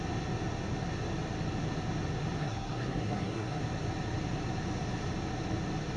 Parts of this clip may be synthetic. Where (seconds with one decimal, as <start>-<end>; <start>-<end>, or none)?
2.4-3.6